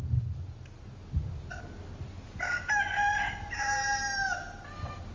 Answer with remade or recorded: recorded